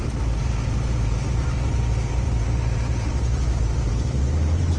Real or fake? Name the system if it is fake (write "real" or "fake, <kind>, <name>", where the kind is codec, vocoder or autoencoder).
fake, vocoder, BigVGAN v2